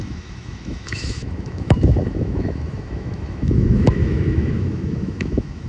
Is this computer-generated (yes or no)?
yes